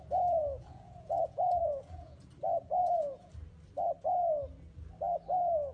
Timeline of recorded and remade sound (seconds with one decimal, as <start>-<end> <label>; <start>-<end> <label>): 0.0-0.4 recorded; 0.4-2.3 remade; 2.3-2.8 recorded; 2.8-3.3 remade; 3.3-5.7 recorded